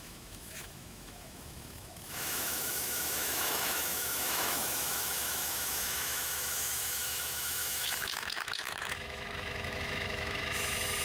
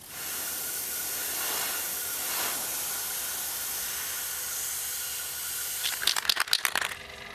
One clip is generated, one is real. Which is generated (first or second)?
first